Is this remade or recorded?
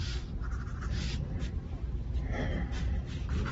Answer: recorded